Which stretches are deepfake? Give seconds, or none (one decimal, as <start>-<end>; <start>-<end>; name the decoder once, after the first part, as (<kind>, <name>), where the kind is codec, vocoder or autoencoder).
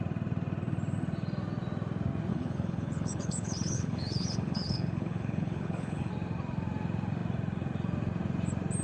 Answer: 2.3-6.1 (codec, HILCodec)